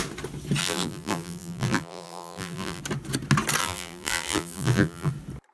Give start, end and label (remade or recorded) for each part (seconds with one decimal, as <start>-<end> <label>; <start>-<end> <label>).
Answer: 0.0-0.6 recorded; 0.6-2.8 remade; 2.8-3.6 recorded; 3.6-5.1 remade; 5.1-5.5 recorded